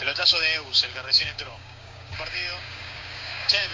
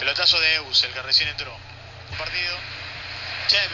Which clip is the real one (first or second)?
second